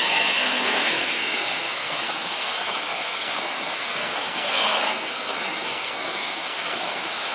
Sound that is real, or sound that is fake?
fake